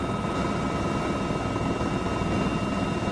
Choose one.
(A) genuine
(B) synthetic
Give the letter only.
A